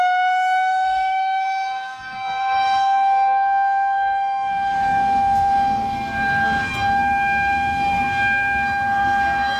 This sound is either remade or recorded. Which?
remade